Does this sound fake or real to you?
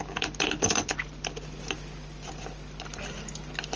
real